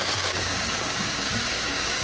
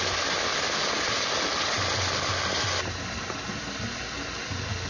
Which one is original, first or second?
second